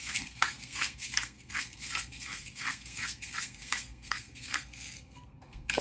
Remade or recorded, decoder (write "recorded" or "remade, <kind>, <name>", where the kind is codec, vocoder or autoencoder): remade, codec, SNAC